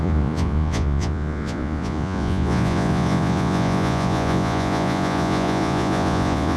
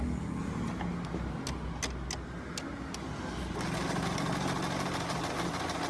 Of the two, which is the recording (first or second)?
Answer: second